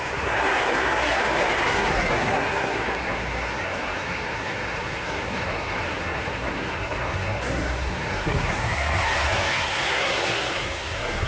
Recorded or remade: remade